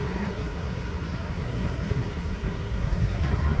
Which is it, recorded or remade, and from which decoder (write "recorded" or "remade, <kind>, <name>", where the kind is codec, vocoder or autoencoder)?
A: remade, codec, SNAC